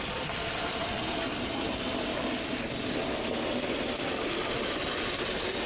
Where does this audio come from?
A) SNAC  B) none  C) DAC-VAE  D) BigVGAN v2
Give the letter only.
B